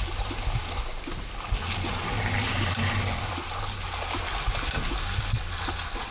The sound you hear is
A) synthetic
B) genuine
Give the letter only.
B